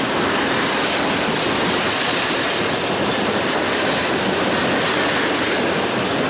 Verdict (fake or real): real